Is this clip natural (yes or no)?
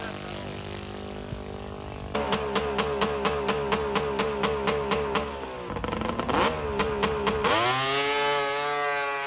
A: yes